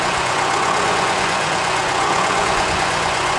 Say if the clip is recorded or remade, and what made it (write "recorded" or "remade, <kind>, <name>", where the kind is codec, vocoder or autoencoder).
remade, vocoder, Vocos